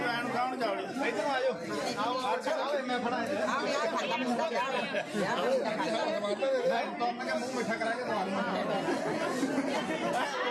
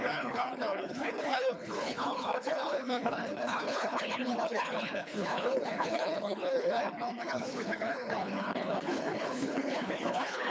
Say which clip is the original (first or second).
first